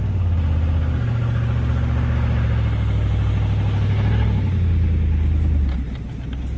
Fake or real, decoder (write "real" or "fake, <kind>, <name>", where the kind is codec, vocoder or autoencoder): real